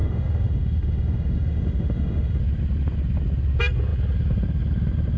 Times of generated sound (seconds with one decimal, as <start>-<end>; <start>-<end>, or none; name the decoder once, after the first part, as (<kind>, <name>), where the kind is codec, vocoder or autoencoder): 0.0-2.4 (autoencoder, DAC-VAE)